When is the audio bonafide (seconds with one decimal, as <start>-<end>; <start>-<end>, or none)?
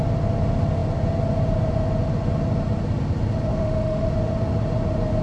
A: 0.0-3.5; 4.1-5.2